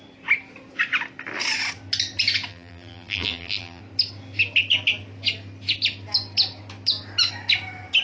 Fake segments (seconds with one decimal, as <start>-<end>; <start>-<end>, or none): 2.5-3.8